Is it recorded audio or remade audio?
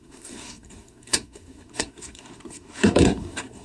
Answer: remade